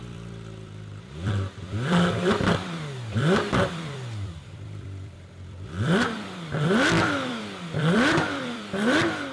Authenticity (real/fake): fake